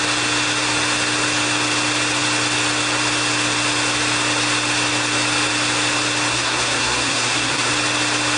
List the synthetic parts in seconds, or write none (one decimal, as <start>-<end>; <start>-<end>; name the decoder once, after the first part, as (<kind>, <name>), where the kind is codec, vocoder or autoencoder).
6.3-7.7 (codec, SNAC)